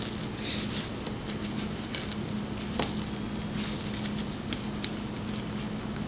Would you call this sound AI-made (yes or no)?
no